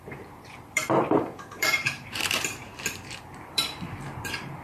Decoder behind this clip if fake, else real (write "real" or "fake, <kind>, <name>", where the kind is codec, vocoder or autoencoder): fake, vocoder, BigVGAN v2